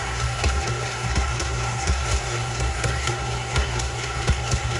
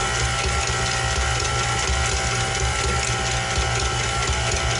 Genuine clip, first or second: second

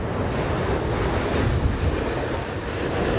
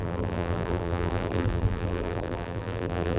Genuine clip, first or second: first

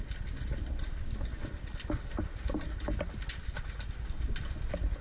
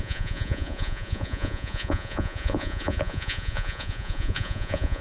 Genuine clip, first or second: first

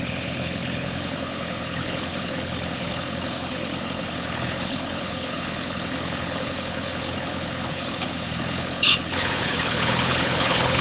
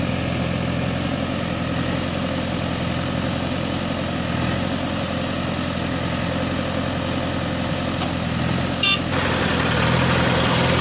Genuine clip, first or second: second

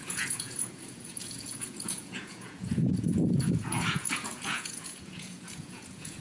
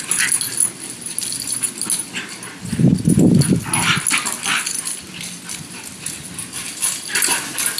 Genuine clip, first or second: second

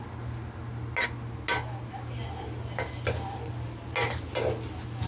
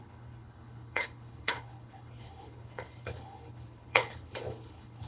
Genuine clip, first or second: first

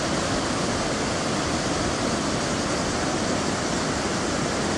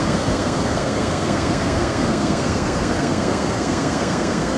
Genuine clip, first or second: first